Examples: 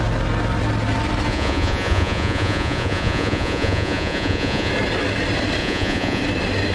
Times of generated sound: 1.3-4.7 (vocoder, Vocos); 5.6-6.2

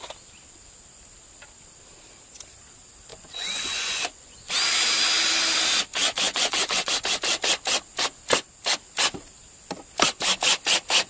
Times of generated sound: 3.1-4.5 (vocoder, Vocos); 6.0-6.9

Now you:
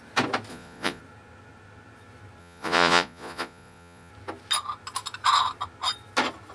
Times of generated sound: 0.5-1.0 (vocoder, Vocos); 2.4-4.1

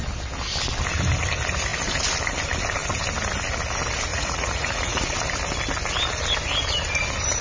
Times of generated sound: 4.1-5.0 (vocoder, Vocos)

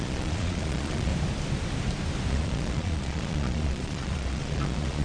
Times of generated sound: 0.0-1.1 (vocoder, Vocos); 2.3-5.0